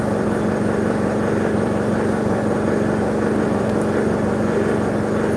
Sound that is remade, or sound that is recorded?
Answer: recorded